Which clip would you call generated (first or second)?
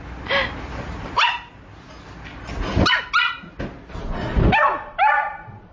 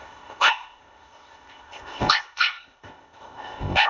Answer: second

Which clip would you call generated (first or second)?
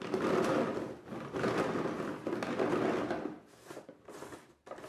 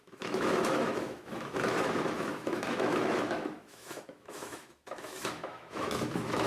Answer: second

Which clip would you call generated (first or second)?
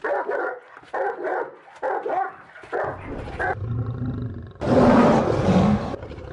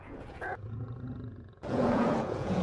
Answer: second